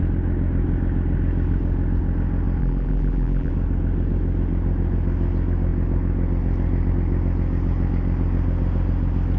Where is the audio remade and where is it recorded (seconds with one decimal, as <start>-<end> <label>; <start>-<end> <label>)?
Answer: 0.0-2.6 recorded; 2.6-3.5 remade; 3.5-9.4 recorded

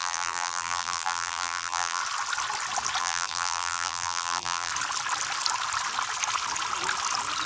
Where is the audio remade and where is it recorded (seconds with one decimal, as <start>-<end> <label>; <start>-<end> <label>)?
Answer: 0.0-2.0 remade; 2.0-3.0 recorded; 3.0-4.7 remade; 4.7-7.5 recorded

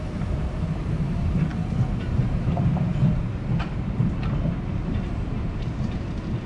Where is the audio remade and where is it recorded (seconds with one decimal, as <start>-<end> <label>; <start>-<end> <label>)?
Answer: 0.0-1.5 remade; 1.5-2.0 recorded; 2.0-3.0 remade; 3.0-4.9 recorded; 4.9-6.5 remade

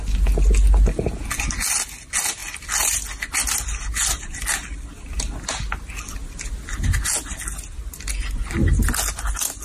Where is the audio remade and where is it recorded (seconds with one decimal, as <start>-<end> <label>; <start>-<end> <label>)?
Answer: 0.0-4.7 recorded; 4.7-5.5 remade; 5.5-9.6 recorded

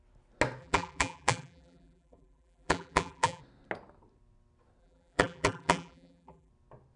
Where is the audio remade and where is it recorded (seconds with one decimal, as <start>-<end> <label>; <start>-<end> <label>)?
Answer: 0.0-0.6 recorded; 0.6-3.4 remade; 3.4-4.8 recorded; 4.8-6.5 remade; 6.5-7.0 recorded